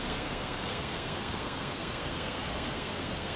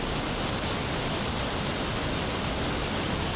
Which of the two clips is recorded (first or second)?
second